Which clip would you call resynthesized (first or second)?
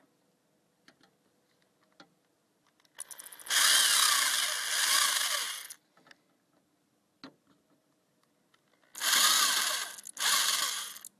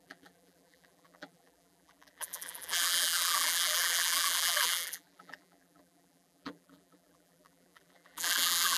second